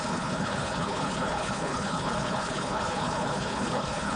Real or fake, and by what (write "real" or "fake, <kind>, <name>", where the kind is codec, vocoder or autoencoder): fake, codec, HILCodec